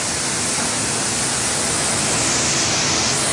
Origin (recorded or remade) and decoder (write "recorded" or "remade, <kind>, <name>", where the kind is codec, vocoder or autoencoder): recorded